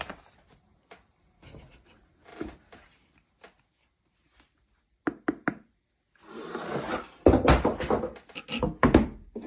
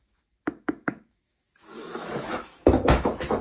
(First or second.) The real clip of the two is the first